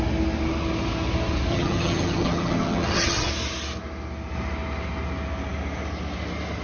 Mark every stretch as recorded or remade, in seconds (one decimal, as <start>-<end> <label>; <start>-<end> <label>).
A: 0.0-1.5 recorded; 1.5-3.3 remade; 3.3-6.6 recorded